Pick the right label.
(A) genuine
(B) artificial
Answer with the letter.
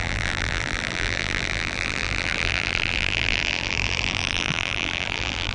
B